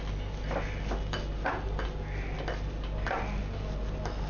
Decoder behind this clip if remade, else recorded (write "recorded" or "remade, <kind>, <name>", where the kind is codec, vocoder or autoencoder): recorded